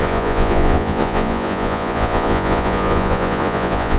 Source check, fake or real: fake